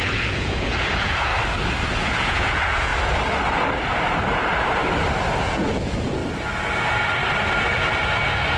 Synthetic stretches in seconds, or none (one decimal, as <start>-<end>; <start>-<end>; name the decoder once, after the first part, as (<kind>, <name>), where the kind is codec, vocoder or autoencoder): 0.0-1.3 (vocoder, Vocos); 1.9-2.9; 5.4-6.2